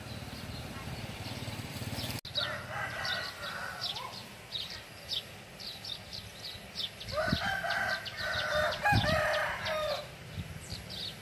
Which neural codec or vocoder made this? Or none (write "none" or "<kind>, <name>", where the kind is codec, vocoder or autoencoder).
none